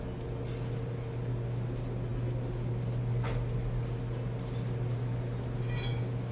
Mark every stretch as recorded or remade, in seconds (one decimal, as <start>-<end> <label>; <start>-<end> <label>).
0.0-6.3 recorded